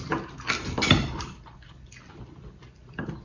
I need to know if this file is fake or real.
fake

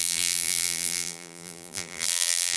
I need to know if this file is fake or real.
fake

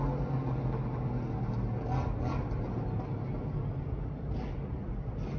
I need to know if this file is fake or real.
real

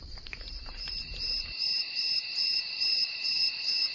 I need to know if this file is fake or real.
fake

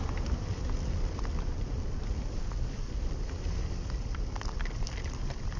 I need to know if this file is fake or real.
fake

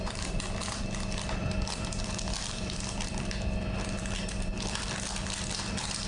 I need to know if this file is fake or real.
fake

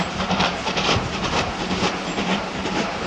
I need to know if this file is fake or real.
fake